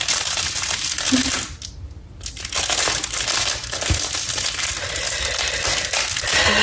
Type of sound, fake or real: real